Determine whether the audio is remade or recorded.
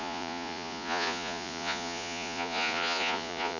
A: remade